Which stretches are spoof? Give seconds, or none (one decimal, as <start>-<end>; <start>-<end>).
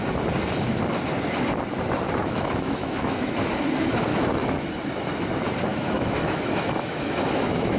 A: 2.2-3.3; 4.1-4.7; 5.7-7.8